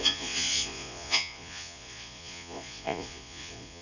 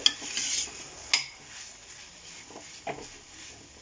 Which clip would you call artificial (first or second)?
first